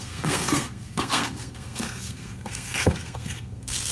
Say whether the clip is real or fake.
fake